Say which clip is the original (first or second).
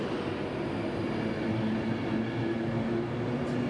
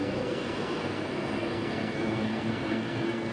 first